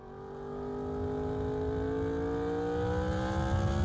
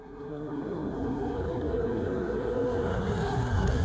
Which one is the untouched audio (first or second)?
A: first